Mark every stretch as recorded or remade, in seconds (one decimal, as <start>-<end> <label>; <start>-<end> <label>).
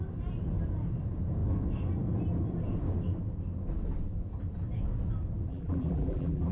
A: 0.0-5.5 recorded; 5.5-6.5 remade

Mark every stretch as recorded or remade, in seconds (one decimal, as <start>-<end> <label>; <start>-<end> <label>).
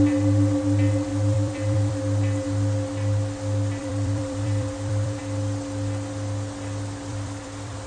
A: 0.0-1.1 recorded; 1.1-2.0 remade; 2.0-3.8 recorded; 3.8-5.2 remade; 5.2-7.1 recorded; 7.1-7.9 remade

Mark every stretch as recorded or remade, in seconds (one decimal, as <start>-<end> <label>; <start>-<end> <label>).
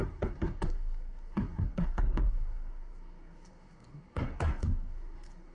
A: 0.0-5.5 remade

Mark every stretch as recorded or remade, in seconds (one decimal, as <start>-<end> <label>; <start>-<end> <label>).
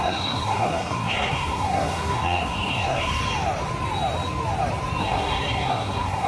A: 0.0-3.2 remade; 3.2-5.0 recorded; 5.0-6.3 remade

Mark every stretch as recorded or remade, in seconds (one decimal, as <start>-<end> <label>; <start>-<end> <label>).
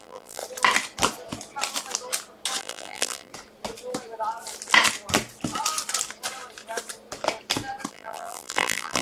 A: 0.0-0.4 remade; 0.4-2.6 recorded; 2.6-3.3 remade; 3.3-7.9 recorded; 7.9-9.0 remade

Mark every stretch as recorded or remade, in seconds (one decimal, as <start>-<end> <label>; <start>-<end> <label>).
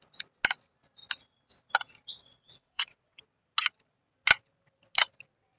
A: 0.0-2.2 recorded; 2.2-3.2 remade; 3.2-5.6 recorded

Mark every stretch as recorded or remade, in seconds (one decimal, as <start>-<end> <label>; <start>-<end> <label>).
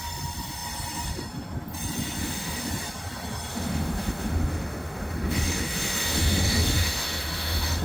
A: 0.0-2.2 recorded; 2.2-2.7 remade; 2.7-3.5 recorded; 3.5-7.8 remade